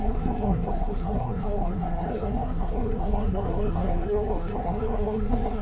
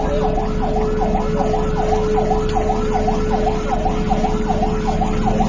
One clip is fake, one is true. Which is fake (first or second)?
first